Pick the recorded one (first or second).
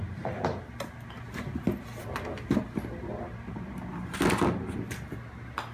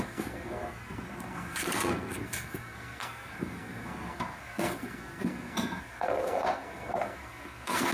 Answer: first